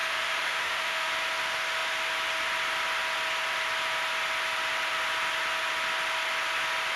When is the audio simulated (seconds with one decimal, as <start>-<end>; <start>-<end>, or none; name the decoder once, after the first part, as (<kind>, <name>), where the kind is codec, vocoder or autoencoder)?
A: 0.0-1.1 (autoencoder, DAC-VAE)